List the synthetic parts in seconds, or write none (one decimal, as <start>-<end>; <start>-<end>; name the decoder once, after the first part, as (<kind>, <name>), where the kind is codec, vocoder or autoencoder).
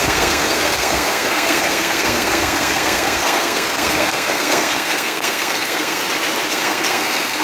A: 0.0-6.0 (codec, SNAC); 6.5-7.4